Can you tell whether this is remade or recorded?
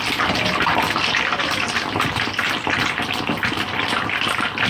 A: recorded